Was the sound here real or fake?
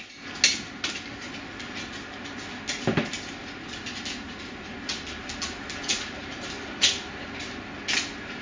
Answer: real